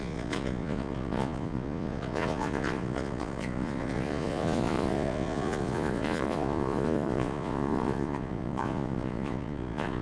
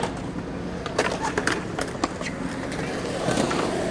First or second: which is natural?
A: second